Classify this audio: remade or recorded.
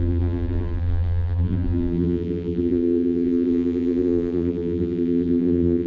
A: remade